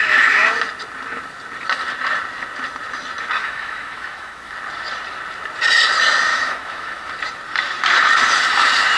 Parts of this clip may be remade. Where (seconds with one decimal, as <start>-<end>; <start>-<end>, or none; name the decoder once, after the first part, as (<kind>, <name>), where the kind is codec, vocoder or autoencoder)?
3.4-4.5 (autoencoder, DAC-VAE); 6.3-7.1